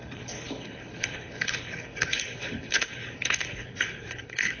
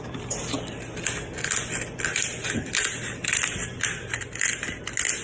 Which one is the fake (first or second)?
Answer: first